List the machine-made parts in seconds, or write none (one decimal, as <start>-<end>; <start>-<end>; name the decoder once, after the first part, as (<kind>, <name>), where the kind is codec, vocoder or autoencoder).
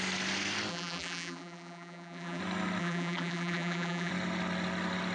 0.7-2.4 (vocoder, BigVGAN v2); 2.8-4.1